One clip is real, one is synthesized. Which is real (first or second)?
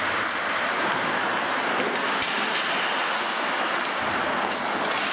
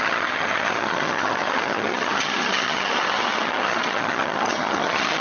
first